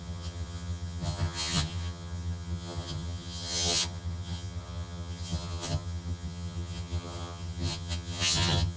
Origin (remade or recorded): remade